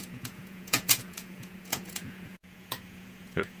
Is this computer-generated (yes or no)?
yes